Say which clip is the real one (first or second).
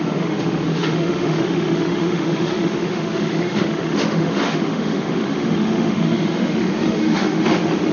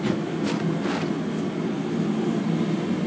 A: second